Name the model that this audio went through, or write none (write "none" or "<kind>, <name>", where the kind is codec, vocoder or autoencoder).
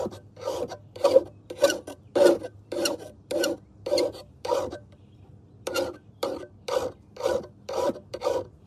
none